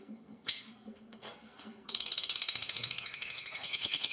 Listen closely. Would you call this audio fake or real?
fake